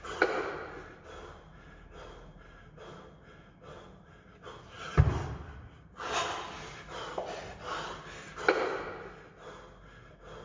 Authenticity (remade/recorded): recorded